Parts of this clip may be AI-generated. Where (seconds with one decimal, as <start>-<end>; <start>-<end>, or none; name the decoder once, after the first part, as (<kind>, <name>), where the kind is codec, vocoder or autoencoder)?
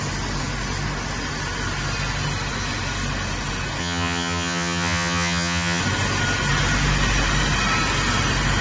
3.8-5.8 (vocoder, HiFi-GAN)